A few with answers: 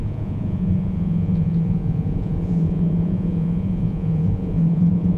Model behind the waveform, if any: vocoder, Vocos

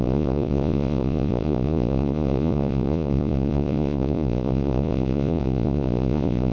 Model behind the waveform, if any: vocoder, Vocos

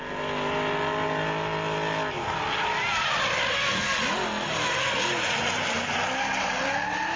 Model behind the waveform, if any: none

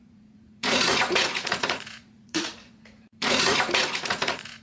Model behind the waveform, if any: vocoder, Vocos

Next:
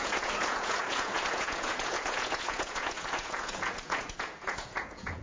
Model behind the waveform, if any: vocoder, Vocos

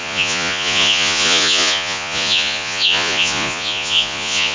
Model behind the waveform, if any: vocoder, Vocos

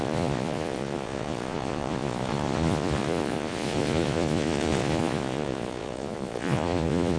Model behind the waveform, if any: vocoder, Vocos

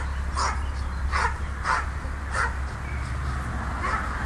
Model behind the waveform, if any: none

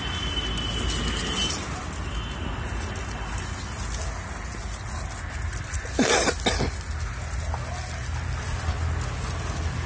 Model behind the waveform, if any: none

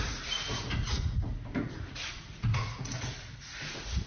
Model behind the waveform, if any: vocoder, Vocos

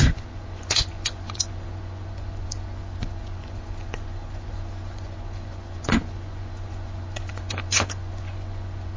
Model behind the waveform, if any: vocoder, Vocos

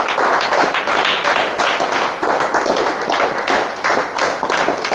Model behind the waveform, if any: none